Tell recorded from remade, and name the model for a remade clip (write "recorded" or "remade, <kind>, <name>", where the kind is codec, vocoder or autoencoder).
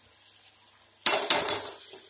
recorded